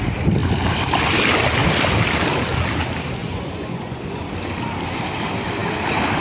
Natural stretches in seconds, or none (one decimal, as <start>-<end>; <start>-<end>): 0.0-3.2; 4.2-6.2